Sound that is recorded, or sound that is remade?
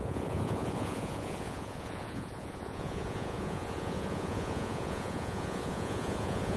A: remade